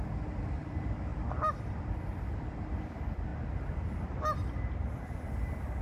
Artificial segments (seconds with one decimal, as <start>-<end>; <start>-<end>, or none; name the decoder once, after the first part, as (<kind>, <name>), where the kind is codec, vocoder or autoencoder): none